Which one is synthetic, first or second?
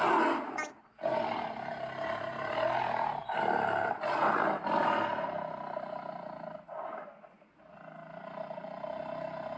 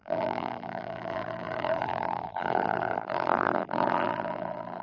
second